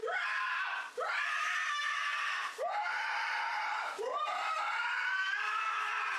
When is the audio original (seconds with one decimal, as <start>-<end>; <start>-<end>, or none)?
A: 0.9-2.1; 5.8-6.2